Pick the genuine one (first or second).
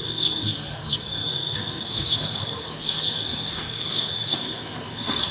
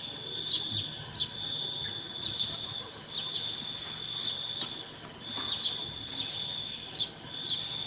second